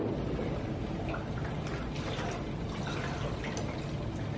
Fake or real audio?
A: real